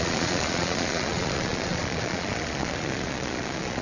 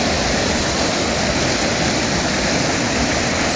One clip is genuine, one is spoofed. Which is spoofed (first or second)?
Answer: first